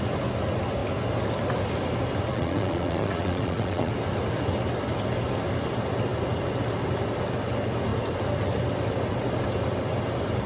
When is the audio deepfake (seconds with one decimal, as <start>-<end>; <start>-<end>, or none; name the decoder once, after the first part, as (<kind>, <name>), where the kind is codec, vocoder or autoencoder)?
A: 2.3-3.9 (vocoder, Vocos)